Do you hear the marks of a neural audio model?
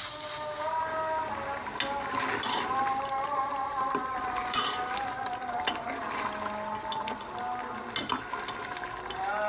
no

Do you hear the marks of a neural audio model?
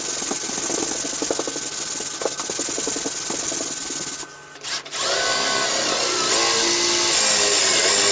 no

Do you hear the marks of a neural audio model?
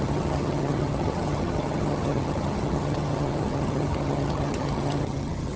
yes